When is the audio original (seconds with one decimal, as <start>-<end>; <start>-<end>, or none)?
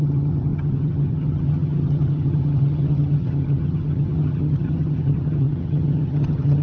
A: none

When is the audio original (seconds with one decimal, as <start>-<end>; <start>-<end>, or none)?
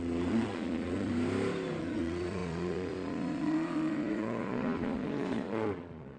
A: 1.1-1.8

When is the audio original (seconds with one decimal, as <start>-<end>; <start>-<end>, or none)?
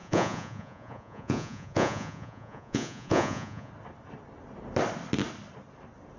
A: 3.7-6.2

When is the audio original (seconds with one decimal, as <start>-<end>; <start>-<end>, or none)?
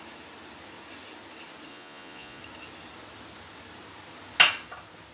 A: 0.0-1.7; 2.4-5.1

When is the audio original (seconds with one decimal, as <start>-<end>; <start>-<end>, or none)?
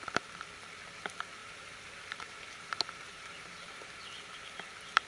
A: 0.0-1.4; 3.8-5.1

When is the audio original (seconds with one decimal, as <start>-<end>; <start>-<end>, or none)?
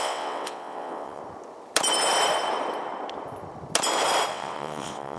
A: 1.2-4.3